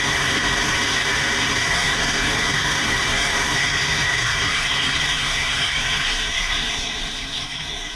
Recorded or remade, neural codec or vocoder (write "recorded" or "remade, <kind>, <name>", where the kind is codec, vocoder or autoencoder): remade, codec, SNAC